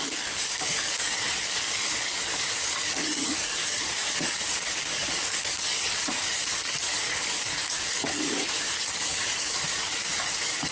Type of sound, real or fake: fake